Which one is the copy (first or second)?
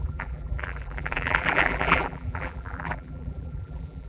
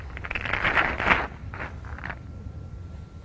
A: first